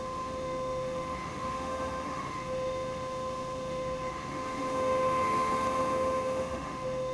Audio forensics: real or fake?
fake